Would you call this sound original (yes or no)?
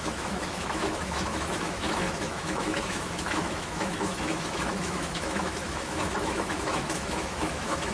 no